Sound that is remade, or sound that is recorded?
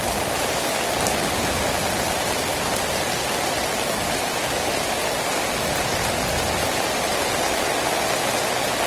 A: recorded